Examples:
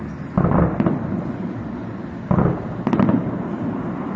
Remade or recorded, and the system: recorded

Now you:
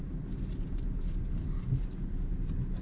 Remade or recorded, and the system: recorded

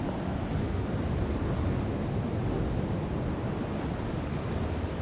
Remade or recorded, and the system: recorded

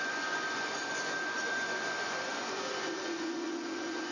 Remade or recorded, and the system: remade, vocoder, Vocos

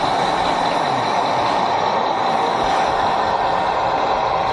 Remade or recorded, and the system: recorded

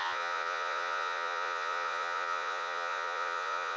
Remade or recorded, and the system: remade, vocoder, Vocos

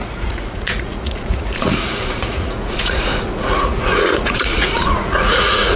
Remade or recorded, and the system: remade, vocoder, Vocos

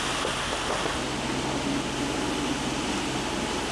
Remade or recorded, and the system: recorded